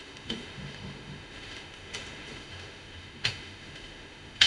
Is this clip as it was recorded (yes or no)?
no